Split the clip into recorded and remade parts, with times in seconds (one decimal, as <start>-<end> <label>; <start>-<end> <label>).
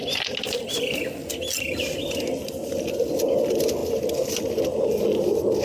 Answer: 0.0-5.6 recorded